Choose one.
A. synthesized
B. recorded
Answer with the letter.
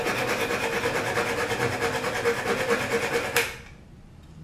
B